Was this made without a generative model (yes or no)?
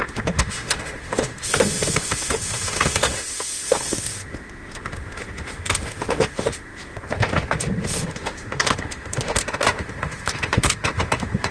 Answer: no